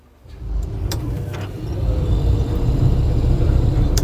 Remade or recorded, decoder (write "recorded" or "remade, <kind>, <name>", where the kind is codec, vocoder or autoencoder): remade, vocoder, BigVGAN v2